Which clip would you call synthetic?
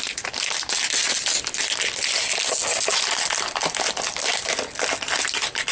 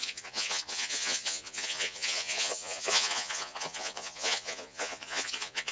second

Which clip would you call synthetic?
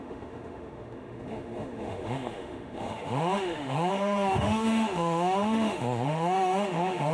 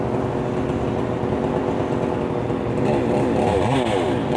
first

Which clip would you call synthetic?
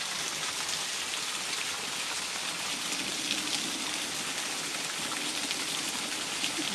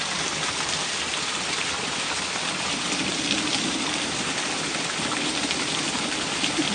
second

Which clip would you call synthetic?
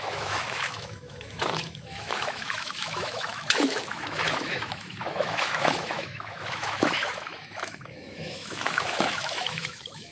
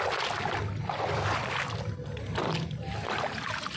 first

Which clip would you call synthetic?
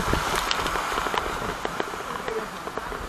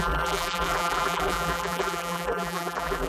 second